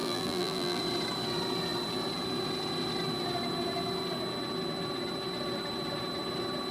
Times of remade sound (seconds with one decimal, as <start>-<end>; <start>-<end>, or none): 0.0-0.8